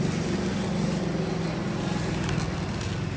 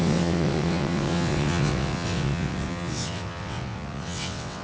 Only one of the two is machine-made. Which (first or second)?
second